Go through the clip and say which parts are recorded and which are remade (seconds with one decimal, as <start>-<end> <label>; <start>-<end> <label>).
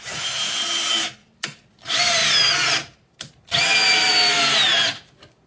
0.0-1.2 recorded; 1.2-1.7 remade; 1.7-5.5 recorded